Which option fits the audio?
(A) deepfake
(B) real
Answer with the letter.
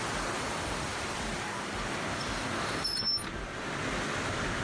B